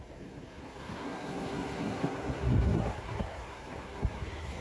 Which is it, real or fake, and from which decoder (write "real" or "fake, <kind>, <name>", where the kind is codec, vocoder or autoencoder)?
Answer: fake, codec, SNAC